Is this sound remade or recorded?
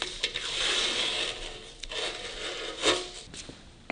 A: recorded